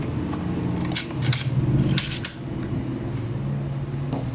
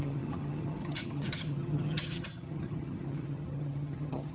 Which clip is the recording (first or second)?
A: first